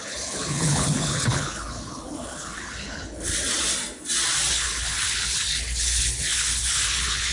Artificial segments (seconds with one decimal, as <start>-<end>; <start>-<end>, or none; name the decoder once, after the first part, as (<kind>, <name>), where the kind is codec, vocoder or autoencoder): 0.0-3.3 (codec, HILCodec); 4.5-7.3